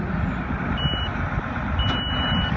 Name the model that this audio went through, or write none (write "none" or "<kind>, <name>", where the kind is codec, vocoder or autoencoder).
none